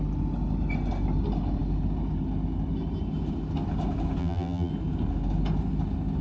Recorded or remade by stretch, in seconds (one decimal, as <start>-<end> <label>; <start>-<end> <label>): 0.0-4.2 recorded; 4.2-4.7 remade; 4.7-6.2 recorded